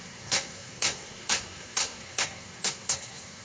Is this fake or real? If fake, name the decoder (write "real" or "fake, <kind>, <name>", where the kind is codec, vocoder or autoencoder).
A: fake, codec, SNAC